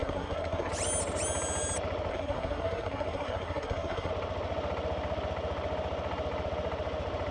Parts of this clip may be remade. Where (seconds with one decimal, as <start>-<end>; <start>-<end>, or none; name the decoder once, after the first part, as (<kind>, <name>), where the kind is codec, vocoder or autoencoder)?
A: 0.0-0.7 (codec, SNAC); 2.1-4.1